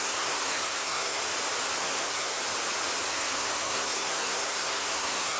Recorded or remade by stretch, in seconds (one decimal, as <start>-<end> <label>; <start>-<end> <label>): 0.0-1.2 remade; 1.2-1.8 recorded; 1.8-2.4 remade; 2.4-3.1 recorded; 3.1-5.4 remade